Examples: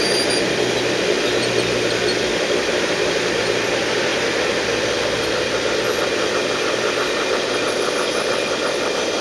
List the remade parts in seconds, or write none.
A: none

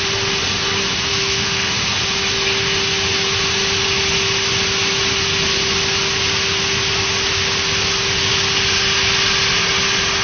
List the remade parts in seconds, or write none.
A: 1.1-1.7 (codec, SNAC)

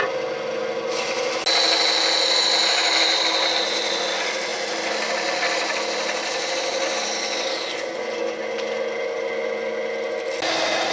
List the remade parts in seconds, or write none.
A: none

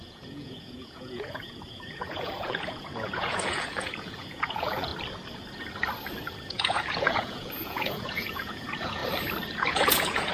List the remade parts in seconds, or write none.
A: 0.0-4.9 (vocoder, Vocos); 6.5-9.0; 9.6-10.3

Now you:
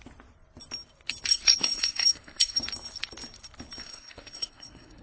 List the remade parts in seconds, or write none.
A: 1.3-2.6 (codec, SNAC); 3.8-5.0

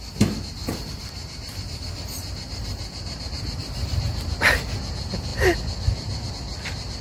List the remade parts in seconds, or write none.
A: 0.6-4.8 (vocoder, BigVGAN v2)

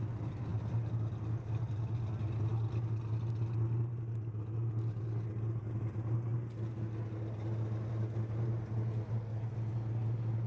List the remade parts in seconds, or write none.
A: none

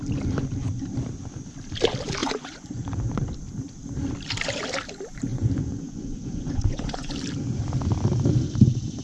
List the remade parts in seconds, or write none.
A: 2.2-3.2 (vocoder, Vocos); 5.3-7.1